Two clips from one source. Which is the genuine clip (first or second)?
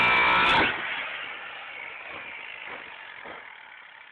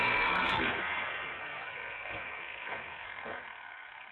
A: first